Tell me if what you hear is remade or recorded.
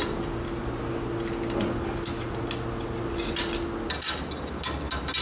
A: recorded